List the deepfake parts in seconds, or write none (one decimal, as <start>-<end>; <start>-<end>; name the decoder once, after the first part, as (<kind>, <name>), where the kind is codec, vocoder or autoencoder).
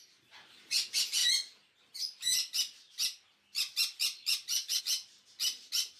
0.0-6.0 (vocoder, BigVGAN v2)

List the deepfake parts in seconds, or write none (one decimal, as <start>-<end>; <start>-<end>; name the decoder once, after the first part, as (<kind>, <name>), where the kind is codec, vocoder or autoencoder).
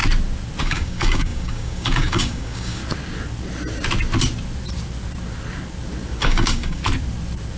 0.6-2.8 (codec, DAC); 6.2-6.8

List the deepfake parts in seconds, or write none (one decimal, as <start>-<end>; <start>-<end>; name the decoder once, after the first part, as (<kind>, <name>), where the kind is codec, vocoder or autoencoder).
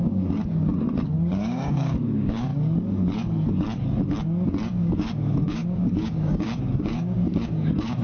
0.0-0.7 (codec, DAC); 1.3-2.5; 4.8-8.0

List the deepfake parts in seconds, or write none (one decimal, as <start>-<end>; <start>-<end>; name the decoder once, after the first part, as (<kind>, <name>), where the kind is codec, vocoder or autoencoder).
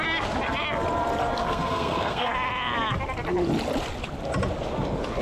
1.4-2.3 (codec, SNAC)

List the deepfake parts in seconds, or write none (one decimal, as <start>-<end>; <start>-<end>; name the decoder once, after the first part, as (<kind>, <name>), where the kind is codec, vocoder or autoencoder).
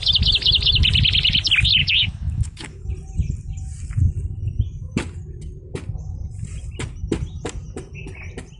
1.8-2.9 (codec, DAC)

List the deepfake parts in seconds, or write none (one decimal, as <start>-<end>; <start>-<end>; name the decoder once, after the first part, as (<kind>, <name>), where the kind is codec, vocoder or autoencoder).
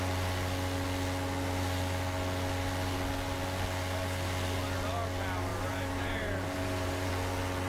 5.5-7.1 (vocoder, BigVGAN v2)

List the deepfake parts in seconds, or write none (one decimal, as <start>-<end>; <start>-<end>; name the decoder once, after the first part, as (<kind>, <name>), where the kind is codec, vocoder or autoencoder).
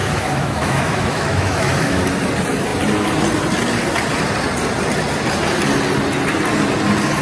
0.0-2.0 (autoencoder, DAC-VAE)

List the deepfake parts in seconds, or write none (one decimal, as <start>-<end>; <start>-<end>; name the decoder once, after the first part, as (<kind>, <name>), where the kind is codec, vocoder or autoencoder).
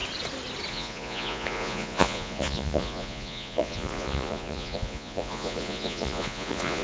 0.7-6.8 (vocoder, Vocos)